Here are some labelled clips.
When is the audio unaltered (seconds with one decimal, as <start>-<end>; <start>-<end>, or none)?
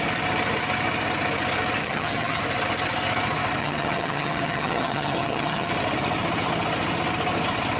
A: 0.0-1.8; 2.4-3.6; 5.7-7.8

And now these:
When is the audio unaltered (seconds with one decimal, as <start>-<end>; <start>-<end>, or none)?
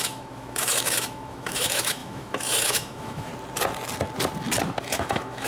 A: 3.3-4.8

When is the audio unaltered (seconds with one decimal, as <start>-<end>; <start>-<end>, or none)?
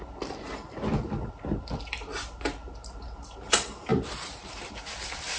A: 0.0-3.9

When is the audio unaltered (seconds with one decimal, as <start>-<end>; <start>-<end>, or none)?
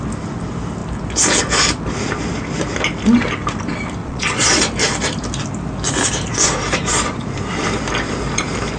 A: 0.0-4.0; 4.6-8.8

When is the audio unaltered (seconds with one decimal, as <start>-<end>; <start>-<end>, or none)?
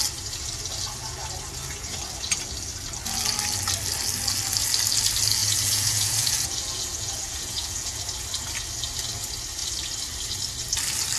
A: 0.0-5.4; 8.0-11.2